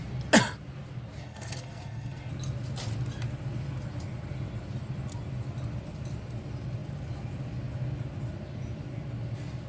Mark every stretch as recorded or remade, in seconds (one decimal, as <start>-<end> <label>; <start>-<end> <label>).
0.0-1.2 recorded; 1.2-2.3 remade; 2.3-9.7 recorded